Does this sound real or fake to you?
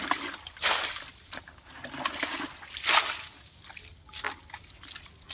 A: real